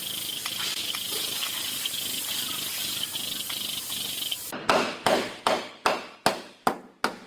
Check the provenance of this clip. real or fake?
real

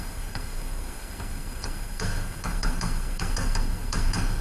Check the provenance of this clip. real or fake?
fake